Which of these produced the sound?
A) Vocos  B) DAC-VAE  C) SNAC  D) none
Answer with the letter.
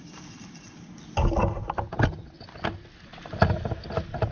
D